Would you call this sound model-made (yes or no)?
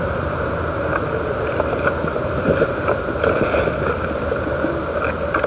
no